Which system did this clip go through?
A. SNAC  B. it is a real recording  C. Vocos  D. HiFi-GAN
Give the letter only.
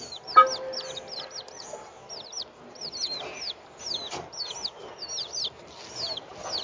B